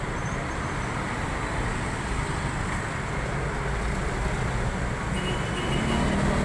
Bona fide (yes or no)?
yes